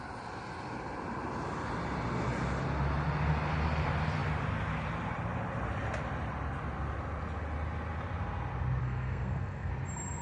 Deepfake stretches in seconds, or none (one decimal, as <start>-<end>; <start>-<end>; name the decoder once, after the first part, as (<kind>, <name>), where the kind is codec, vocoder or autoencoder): 8.8-9.7 (codec, SNAC)